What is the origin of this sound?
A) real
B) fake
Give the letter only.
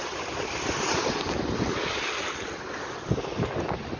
A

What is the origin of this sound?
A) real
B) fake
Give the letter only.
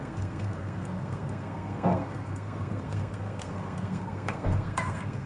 B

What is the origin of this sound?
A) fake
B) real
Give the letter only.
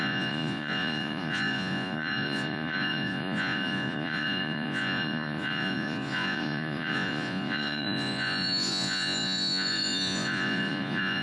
A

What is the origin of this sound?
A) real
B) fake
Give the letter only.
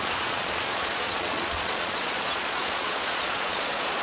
B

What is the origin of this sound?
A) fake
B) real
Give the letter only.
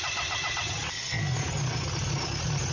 B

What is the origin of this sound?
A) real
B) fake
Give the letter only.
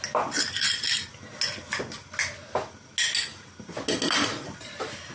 A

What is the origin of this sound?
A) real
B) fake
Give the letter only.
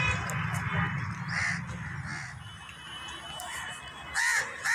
A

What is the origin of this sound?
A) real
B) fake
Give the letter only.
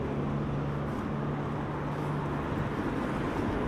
A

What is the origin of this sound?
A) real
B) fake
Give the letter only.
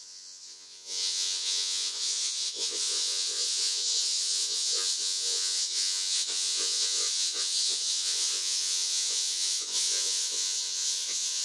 B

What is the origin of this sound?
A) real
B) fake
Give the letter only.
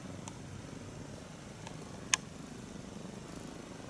A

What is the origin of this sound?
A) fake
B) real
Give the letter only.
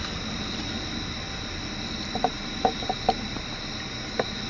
B